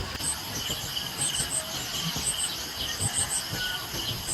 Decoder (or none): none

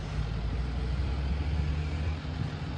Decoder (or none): none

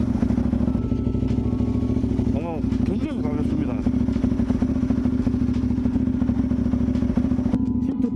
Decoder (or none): none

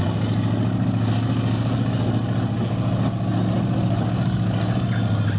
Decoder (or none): none